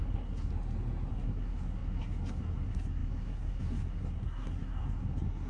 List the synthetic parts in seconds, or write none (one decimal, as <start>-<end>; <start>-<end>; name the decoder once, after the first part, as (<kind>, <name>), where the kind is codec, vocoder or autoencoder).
0.0-0.5 (codec, SNAC); 1.1-5.5